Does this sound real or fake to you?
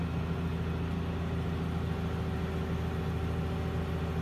real